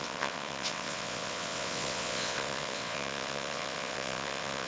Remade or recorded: remade